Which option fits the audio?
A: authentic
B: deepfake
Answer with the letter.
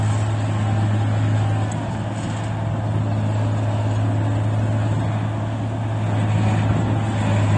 A